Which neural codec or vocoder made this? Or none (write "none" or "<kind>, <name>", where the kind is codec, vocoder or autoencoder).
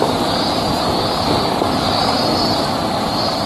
none